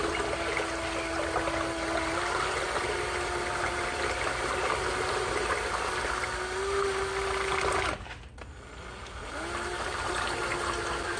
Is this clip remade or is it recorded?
recorded